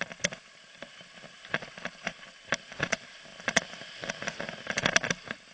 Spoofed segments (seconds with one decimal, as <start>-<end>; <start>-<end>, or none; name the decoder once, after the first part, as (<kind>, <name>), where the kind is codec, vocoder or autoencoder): none